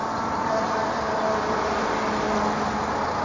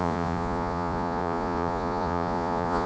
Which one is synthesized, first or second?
second